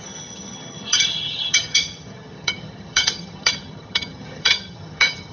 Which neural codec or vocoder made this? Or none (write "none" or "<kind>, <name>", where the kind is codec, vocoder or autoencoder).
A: vocoder, HiFi-GAN